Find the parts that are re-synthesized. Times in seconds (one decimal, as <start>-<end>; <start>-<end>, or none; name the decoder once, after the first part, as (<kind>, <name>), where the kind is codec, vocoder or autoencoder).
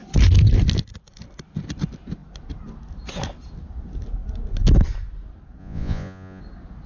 5.6-6.4 (vocoder, Vocos)